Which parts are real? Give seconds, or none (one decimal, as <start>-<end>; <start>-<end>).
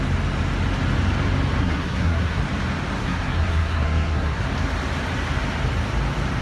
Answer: 0.0-1.6; 2.4-3.0; 4.4-6.4